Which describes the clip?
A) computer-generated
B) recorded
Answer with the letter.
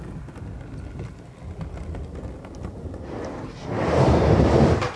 B